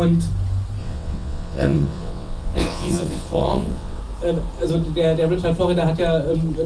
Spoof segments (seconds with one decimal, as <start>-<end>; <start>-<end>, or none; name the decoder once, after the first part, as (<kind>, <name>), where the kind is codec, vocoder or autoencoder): 0.8-4.0 (vocoder, WaveNeXt)